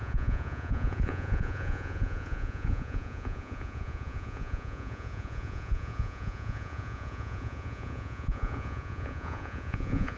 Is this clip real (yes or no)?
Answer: no